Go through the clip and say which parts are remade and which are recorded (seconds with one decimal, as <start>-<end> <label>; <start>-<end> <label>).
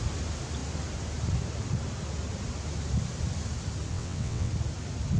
0.0-3.9 recorded; 3.9-4.5 remade; 4.5-5.2 recorded